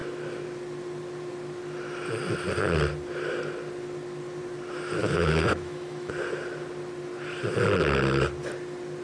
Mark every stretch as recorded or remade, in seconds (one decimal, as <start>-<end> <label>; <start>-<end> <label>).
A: 0.0-5.0 recorded; 5.0-6.1 remade; 6.1-9.0 recorded